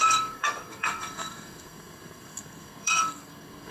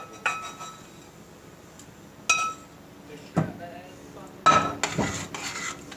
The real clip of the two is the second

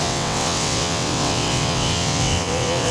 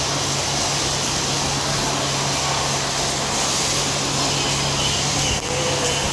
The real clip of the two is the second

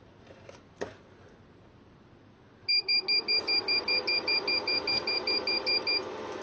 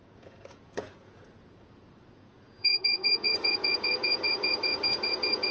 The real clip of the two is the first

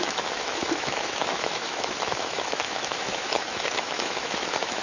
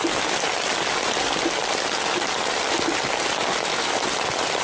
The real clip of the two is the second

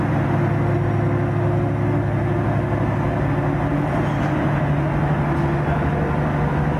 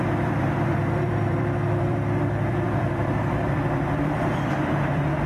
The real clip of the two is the first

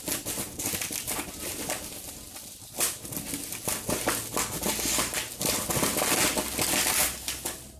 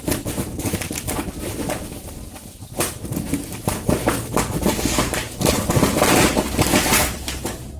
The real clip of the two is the first